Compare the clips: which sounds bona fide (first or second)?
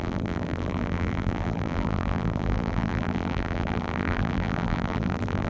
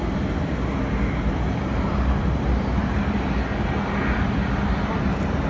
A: second